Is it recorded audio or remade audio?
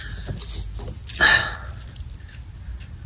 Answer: recorded